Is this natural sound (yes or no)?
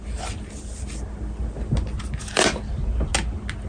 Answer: yes